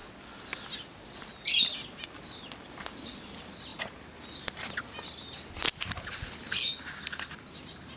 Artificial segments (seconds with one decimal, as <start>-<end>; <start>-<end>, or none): 2.6-3.7; 4.4-5.6; 7.5-8.0